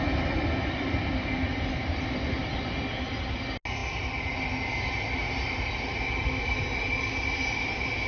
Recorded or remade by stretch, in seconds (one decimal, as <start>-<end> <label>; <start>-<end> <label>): 0.0-8.1 recorded